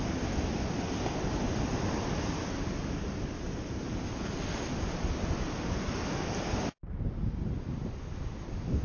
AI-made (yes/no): no